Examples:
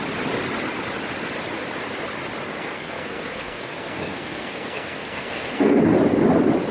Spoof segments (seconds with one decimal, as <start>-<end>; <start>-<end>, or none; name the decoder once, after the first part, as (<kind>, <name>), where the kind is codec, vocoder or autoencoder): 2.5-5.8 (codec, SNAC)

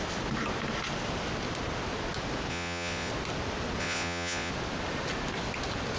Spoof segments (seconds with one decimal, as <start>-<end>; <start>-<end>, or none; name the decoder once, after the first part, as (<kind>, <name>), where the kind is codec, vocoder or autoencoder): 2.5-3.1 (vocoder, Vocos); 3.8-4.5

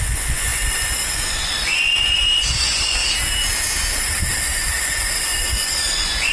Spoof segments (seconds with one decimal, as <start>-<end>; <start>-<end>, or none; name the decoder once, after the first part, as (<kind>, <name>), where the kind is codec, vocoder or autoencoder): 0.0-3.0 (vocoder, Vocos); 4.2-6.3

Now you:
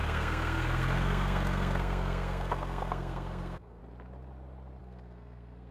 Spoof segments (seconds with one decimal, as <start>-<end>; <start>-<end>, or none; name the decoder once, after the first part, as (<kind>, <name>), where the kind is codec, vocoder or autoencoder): 0.0-3.8 (codec, SNAC); 4.8-5.7

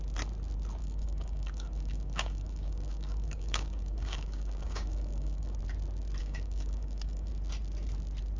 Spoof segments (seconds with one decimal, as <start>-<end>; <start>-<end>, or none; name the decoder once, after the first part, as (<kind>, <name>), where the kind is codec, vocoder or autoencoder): 0.8-5.6 (codec, DAC); 6.2-7.3

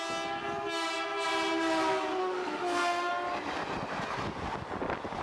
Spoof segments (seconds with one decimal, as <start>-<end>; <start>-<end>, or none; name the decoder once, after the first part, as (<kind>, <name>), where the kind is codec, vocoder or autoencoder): 2.2-3.1 (autoencoder, DAC-VAE)

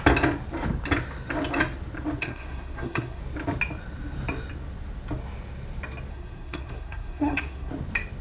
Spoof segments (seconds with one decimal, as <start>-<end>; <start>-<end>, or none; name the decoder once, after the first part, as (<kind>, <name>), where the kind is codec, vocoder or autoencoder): 2.2-3.2 (codec, SNAC); 6.1-7.7